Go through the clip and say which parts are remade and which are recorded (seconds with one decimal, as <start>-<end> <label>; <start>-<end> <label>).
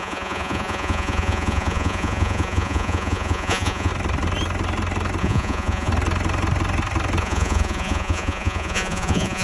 0.0-3.9 remade; 3.9-5.2 recorded; 5.2-5.9 remade; 5.9-7.2 recorded; 7.2-9.4 remade